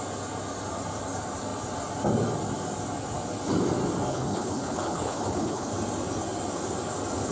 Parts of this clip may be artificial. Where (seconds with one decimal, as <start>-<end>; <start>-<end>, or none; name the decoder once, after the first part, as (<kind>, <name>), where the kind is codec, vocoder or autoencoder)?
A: 4.1-5.7 (codec, HILCodec)